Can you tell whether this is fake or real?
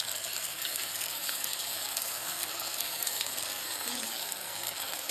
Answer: fake